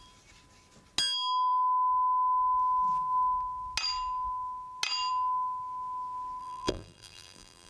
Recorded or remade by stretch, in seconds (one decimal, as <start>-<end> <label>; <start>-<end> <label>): 0.0-6.4 recorded; 6.4-7.7 remade